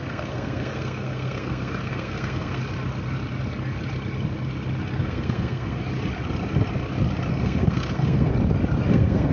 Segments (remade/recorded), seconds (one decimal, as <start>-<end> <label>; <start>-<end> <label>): 0.0-2.6 remade; 2.6-5.0 recorded; 5.0-5.8 remade; 5.8-7.3 recorded; 7.3-8.3 remade; 8.3-8.9 recorded; 8.9-9.3 remade